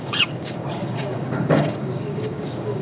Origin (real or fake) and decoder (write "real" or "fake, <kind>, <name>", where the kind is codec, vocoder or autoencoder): fake, codec, DAC